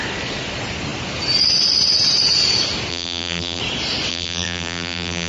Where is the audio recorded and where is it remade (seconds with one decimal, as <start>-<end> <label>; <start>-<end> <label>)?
0.0-2.9 recorded; 2.9-3.6 remade; 3.6-4.1 recorded; 4.1-5.3 remade